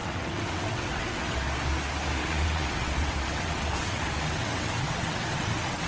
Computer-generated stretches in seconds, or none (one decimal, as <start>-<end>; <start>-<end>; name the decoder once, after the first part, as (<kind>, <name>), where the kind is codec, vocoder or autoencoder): 0.0-1.4 (vocoder, WaveNeXt); 2.2-5.9